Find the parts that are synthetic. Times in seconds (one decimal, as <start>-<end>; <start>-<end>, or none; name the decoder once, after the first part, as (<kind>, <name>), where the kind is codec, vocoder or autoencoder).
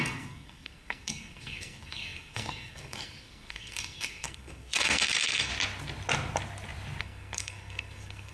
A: 0.0-5.5 (codec, SNAC); 7.0-8.3